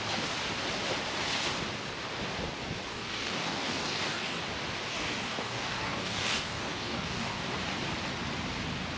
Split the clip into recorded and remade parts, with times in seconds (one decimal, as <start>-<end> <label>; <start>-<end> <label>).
0.0-2.9 recorded; 2.9-4.4 remade; 4.4-4.9 recorded; 4.9-7.4 remade; 7.4-9.0 recorded